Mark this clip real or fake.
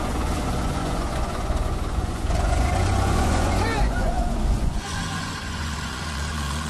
fake